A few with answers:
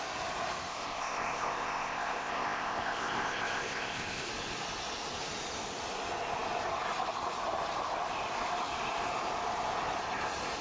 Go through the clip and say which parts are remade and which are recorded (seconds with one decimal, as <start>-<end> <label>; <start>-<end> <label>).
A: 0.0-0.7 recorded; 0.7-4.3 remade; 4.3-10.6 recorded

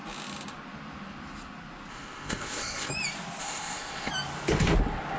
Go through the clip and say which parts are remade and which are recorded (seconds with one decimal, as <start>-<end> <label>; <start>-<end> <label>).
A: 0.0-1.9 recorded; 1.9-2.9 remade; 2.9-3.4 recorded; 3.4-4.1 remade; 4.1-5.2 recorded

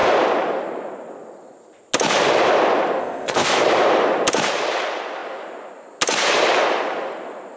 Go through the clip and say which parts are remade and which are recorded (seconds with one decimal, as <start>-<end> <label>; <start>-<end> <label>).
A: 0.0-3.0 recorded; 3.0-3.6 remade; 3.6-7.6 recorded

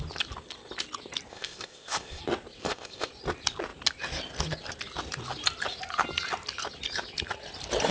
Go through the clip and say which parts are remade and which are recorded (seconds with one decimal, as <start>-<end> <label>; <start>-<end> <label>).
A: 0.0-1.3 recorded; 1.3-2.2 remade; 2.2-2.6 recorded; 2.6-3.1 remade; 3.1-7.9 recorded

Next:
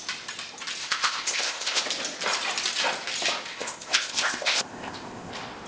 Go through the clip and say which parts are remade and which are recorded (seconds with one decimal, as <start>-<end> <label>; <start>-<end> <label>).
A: 0.0-0.8 recorded; 0.8-1.8 remade; 1.8-3.5 recorded; 3.5-5.3 remade; 5.3-5.7 recorded

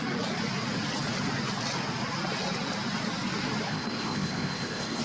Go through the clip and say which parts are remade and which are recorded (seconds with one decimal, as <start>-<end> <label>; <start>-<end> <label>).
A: 0.0-3.7 recorded; 3.7-5.0 remade

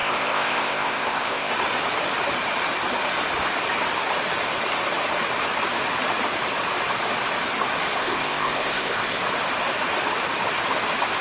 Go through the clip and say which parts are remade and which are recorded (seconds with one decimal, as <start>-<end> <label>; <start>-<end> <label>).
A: 0.0-1.5 remade; 1.5-8.0 recorded; 8.0-9.2 remade; 9.2-11.2 recorded

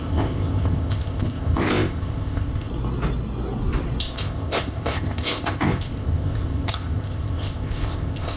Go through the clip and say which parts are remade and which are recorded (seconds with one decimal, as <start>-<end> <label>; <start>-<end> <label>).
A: 0.0-2.7 remade; 2.7-4.0 recorded; 4.0-8.4 remade